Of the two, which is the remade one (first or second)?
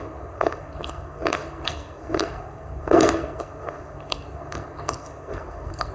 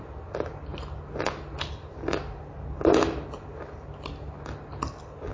first